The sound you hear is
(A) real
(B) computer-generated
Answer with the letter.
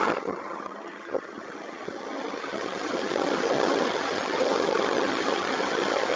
B